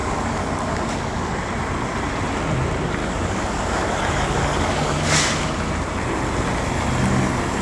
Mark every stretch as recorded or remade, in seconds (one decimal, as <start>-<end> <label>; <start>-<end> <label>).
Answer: 0.0-1.3 remade; 1.3-3.0 recorded; 3.0-5.2 remade; 5.2-7.6 recorded